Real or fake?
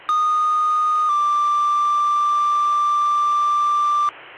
real